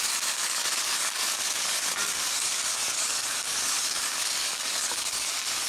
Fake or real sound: fake